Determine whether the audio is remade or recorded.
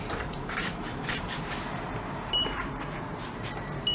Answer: remade